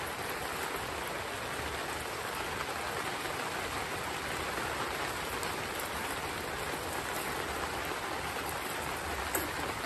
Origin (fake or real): real